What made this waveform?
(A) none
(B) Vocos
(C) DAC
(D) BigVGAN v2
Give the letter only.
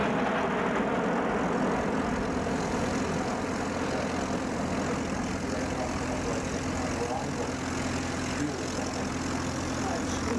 A